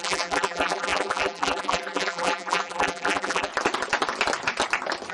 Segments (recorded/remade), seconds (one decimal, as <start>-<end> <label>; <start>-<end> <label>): 0.0-3.5 remade; 3.5-5.1 recorded